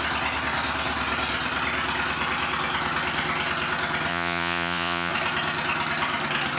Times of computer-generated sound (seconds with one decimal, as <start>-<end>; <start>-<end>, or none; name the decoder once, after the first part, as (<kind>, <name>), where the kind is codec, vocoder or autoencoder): 4.1-5.1 (vocoder, Vocos)